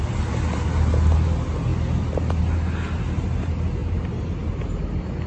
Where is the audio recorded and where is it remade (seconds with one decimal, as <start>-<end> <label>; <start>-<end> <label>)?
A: 0.0-5.3 recorded